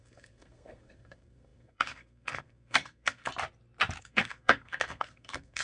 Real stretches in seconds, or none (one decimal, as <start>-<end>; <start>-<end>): 3.3-4.0